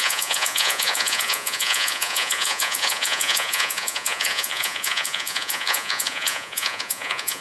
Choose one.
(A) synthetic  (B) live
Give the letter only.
A